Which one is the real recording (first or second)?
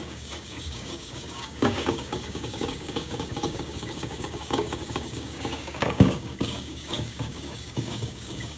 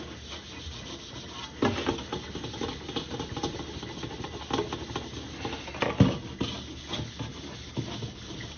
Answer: second